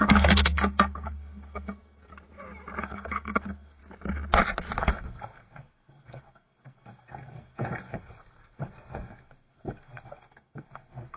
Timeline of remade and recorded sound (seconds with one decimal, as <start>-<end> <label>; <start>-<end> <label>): 0.0-2.1 remade; 2.1-2.8 recorded; 2.8-3.8 remade; 3.8-4.8 recorded; 4.8-11.2 remade